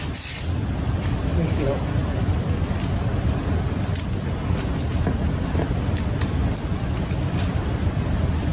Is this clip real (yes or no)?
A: yes